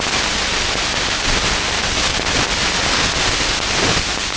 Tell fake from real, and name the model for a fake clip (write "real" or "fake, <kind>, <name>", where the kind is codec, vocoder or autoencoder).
real